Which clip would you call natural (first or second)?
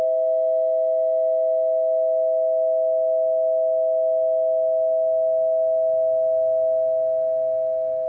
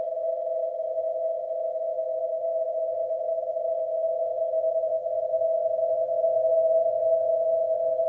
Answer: first